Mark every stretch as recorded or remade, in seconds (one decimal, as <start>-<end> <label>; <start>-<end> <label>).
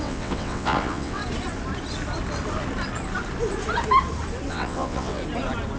0.0-1.2 remade; 1.2-4.5 recorded; 4.5-5.2 remade; 5.2-5.8 recorded